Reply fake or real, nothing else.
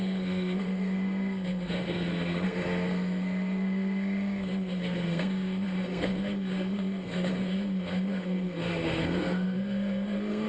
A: fake